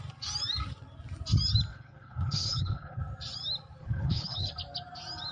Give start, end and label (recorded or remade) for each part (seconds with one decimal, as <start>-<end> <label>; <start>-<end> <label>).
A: 0.0-1.7 recorded; 1.7-3.0 remade; 3.0-3.8 recorded; 3.8-4.5 remade; 4.5-5.3 recorded